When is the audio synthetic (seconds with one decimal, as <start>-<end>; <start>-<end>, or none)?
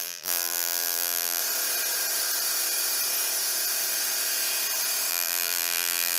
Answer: 0.0-1.4; 5.1-6.2